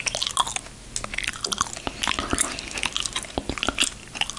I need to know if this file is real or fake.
real